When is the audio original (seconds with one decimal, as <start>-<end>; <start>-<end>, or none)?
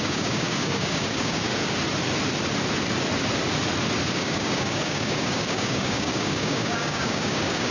1.5-4.1